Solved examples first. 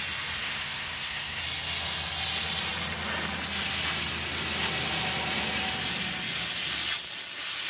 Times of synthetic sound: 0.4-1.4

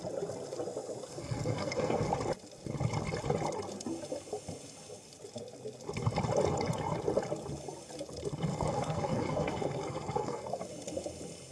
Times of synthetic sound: 1.1-2.1; 8.5-10.6

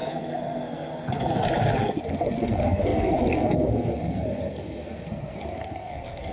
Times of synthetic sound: 0.0-6.3